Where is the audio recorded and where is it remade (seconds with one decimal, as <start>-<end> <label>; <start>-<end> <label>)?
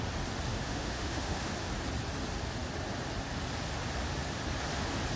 0.0-0.5 recorded; 0.5-1.5 remade; 1.5-5.2 recorded